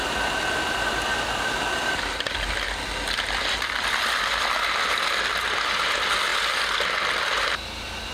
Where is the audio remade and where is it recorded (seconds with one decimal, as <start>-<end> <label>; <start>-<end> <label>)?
0.0-8.1 recorded

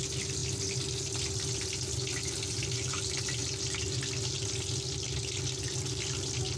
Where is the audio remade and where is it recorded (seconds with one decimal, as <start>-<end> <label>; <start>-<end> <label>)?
0.0-6.6 recorded